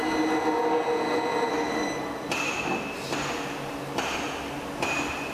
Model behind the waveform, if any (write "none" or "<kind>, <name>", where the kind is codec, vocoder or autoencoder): none